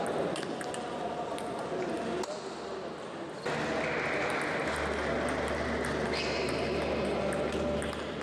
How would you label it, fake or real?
real